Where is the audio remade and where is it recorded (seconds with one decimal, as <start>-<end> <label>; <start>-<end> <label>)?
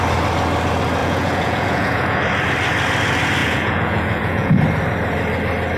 0.0-1.0 recorded; 1.0-2.2 remade; 2.2-3.4 recorded; 3.4-4.6 remade; 4.6-5.8 recorded